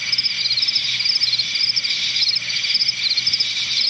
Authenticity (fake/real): real